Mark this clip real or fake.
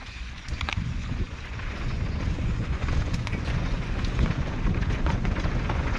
fake